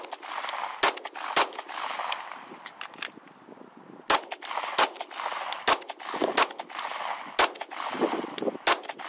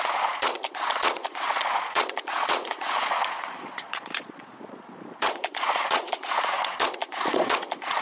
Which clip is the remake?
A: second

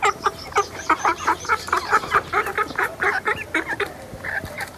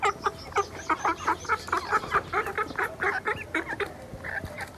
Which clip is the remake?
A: first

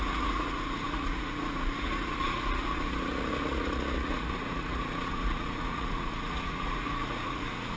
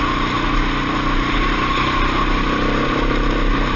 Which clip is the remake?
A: first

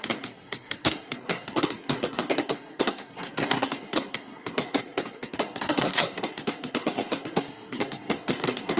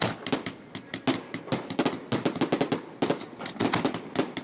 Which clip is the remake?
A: first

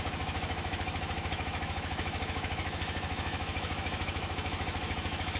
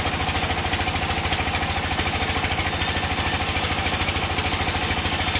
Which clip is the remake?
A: first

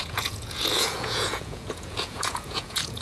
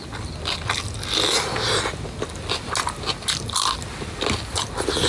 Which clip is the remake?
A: first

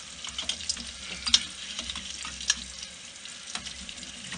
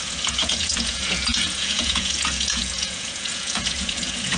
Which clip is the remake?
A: second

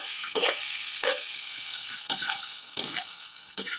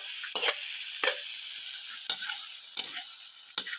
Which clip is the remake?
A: first